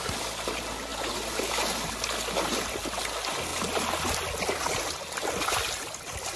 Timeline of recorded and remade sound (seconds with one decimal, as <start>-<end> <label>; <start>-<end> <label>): 0.0-6.4 recorded